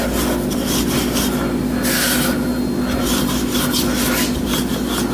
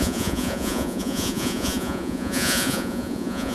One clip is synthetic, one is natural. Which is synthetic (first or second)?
second